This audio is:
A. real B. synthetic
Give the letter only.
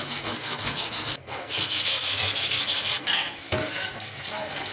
B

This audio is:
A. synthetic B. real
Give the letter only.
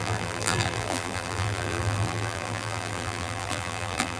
A